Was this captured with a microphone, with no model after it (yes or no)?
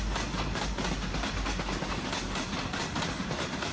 yes